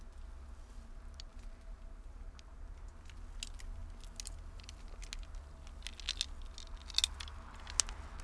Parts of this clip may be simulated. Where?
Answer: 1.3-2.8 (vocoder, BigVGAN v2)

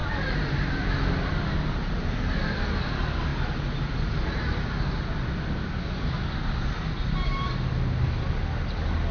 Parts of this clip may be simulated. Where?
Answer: none

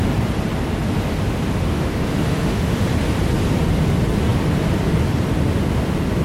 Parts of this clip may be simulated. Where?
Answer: 1.6-2.9 (autoencoder, DAC-VAE)

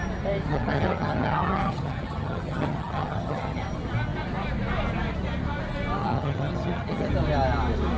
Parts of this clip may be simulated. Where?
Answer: 0.5-3.6 (vocoder, HiFi-GAN); 6.0-7.1

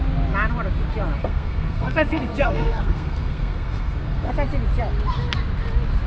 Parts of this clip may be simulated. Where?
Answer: 1.2-4.3 (codec, SNAC)